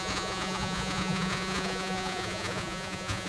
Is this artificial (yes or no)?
yes